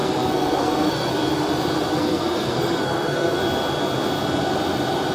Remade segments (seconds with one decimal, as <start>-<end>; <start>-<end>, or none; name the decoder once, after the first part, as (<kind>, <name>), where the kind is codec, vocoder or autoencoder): 0.0-1.1 (codec, SNAC); 1.9-3.4